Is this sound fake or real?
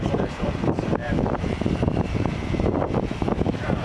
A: fake